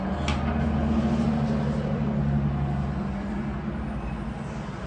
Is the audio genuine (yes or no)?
yes